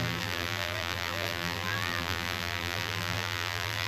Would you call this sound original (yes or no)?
no